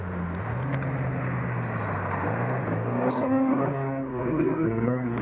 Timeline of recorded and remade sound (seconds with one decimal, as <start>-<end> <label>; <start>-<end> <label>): 0.0-3.1 recorded; 3.1-5.2 remade